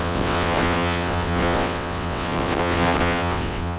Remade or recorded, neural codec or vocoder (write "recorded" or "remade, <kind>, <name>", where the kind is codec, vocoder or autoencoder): remade, vocoder, WaveNeXt